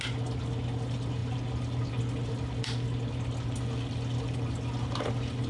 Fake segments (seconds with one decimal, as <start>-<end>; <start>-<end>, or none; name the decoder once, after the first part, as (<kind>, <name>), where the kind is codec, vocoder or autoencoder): none